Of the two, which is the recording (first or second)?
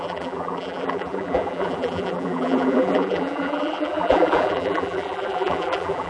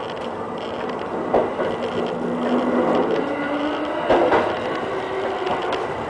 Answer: second